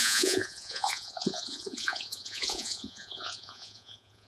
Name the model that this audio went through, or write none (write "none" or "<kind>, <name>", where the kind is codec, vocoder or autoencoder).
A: vocoder, Vocos